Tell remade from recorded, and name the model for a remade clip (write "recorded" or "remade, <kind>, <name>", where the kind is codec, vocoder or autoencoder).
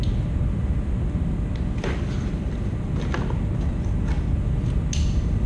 recorded